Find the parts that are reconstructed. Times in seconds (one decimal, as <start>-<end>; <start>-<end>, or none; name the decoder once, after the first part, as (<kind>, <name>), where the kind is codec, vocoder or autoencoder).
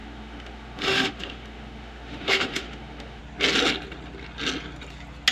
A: 0.0-3.2 (autoencoder, DAC-VAE)